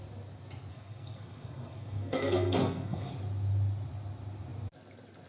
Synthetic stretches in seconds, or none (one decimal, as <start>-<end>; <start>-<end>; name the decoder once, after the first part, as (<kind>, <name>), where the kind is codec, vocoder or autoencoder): 0.7-3.1 (codec, SNAC)